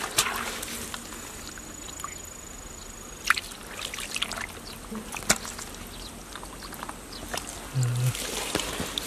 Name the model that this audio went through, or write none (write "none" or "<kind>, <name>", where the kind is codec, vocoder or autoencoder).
none